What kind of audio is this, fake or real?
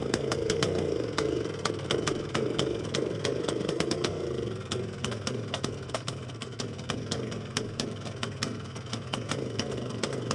fake